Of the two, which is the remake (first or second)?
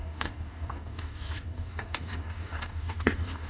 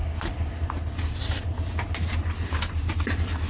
first